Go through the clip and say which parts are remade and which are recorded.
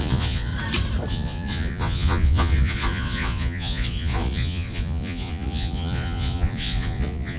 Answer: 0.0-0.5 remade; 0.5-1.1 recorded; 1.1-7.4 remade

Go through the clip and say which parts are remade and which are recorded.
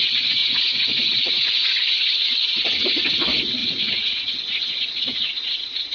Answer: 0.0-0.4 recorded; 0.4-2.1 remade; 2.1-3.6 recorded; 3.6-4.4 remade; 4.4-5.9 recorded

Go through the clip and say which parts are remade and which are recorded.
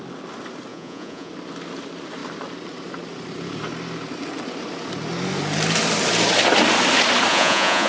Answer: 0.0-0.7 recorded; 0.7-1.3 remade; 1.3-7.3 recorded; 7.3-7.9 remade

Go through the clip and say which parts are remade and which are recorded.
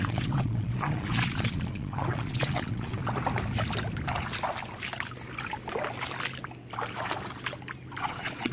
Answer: 0.0-3.0 remade; 3.0-8.0 recorded; 8.0-8.5 remade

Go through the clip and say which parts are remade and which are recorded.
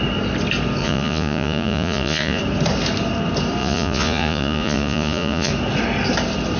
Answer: 0.0-0.8 recorded; 0.8-2.4 remade; 2.4-3.6 recorded; 3.6-5.5 remade; 5.5-6.6 recorded